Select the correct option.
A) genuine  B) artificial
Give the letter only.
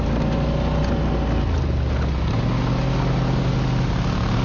A